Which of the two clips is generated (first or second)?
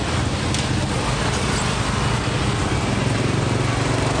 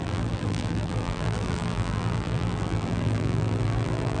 second